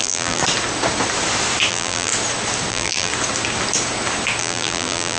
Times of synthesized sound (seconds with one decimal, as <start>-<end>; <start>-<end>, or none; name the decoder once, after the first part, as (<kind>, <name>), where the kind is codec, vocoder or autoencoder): 0.0-0.4 (vocoder, BigVGAN v2); 1.7-2.1; 2.7-3.1; 4.4-5.2